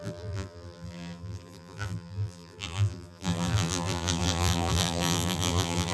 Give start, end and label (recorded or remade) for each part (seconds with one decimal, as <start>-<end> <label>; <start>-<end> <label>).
0.0-5.9 remade